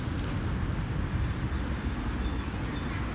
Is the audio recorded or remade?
recorded